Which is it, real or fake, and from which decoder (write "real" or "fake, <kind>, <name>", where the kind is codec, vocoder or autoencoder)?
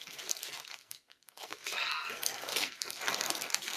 fake, codec, SNAC